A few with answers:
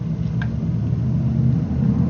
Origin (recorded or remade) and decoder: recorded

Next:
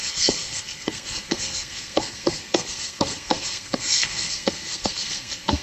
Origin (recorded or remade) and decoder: remade, codec, SNAC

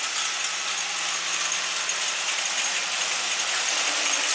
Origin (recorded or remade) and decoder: recorded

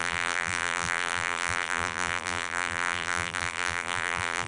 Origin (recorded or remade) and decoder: remade, vocoder, BigVGAN v2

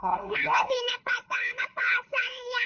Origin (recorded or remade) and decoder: remade, codec, HILCodec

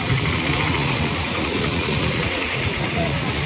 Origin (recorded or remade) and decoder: remade, vocoder, Vocos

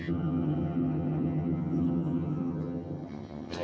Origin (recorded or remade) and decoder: remade, vocoder, HiFi-GAN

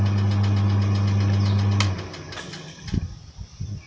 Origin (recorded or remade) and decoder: recorded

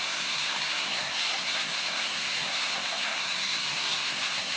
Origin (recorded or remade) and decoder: remade, codec, SNAC